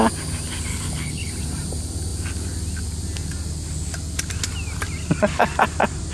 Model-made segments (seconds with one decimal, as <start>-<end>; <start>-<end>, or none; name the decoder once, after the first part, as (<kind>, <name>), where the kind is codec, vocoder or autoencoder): 0.7-1.3 (codec, HILCodec)